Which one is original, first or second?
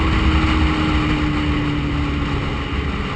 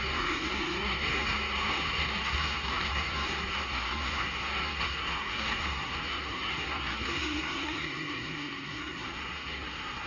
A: first